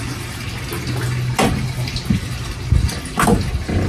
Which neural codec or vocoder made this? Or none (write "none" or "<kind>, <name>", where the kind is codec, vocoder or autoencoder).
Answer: none